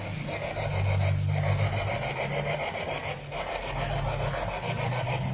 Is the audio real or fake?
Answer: real